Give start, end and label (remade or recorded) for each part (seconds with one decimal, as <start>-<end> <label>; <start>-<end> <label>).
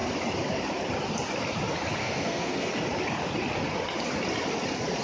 0.0-2.0 recorded; 2.0-2.7 remade; 2.7-5.0 recorded